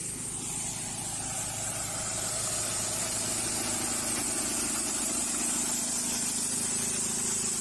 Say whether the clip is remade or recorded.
recorded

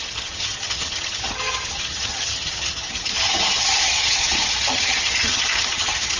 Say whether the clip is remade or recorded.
remade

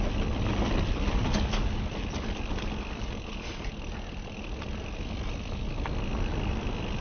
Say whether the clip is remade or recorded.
recorded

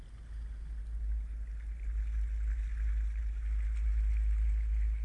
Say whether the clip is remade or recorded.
recorded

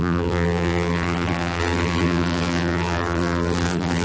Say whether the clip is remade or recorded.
remade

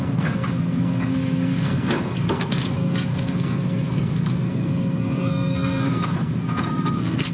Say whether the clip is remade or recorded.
remade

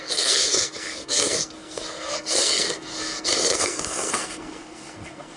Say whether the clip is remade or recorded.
remade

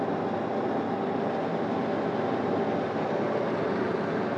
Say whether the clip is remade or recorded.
recorded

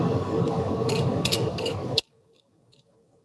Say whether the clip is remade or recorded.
remade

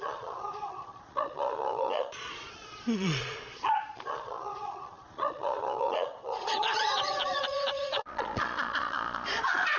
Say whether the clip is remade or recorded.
remade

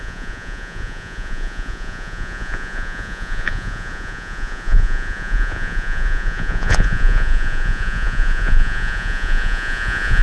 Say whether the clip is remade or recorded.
remade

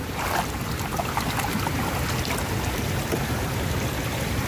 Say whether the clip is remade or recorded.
recorded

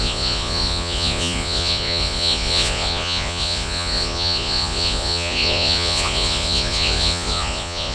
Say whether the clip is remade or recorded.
remade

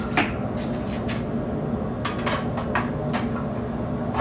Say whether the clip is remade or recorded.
recorded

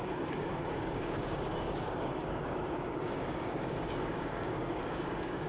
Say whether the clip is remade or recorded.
remade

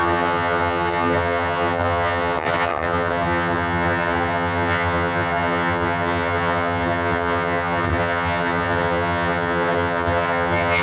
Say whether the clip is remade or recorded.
remade